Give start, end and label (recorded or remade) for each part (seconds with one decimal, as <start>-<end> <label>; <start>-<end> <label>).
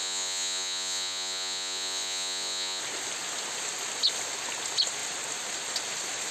0.0-2.8 remade; 2.8-6.3 recorded